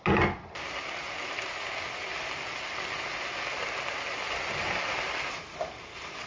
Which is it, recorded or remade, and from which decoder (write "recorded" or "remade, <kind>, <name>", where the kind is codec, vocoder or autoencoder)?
recorded